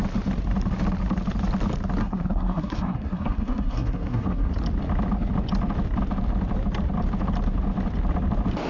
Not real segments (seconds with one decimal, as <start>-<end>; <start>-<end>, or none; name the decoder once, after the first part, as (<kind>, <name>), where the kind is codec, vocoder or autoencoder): 2.0-4.5 (codec, SNAC)